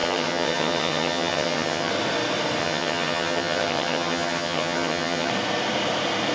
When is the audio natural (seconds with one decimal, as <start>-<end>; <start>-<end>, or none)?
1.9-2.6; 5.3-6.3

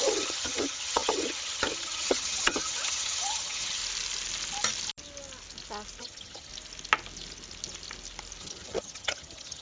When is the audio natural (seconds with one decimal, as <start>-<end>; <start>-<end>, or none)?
3.8-6.0; 6.5-8.4

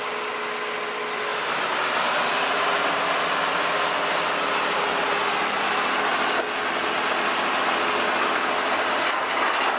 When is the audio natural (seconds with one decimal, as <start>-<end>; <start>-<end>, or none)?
0.0-9.8

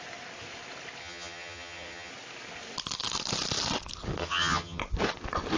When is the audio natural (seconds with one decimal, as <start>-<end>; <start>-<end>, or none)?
0.0-1.0; 2.1-4.2; 4.8-5.6